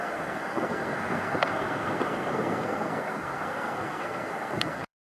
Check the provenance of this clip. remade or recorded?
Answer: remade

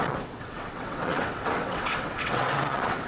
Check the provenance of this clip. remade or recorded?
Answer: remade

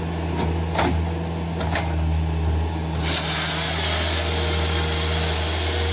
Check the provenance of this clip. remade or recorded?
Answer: recorded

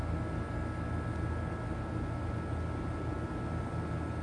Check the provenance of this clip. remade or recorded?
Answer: recorded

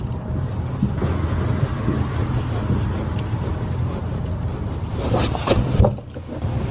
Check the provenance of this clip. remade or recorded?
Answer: recorded